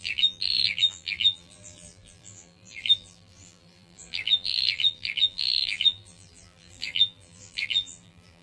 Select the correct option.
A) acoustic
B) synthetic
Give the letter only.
B